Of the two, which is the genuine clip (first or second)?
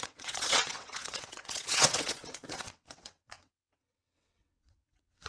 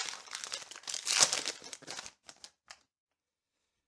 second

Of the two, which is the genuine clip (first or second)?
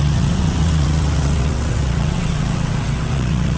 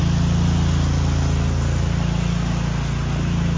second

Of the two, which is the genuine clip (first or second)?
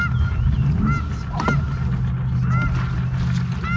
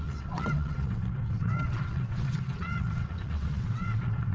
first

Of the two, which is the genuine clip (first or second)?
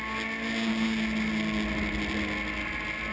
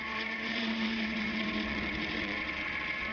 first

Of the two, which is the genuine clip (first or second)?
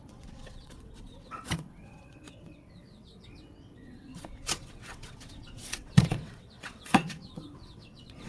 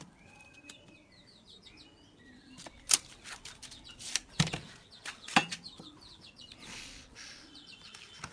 second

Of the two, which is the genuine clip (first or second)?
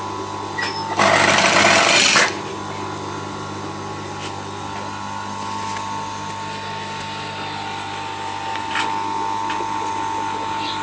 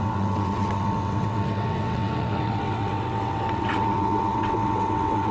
first